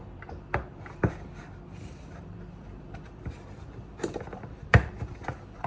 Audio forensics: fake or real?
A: fake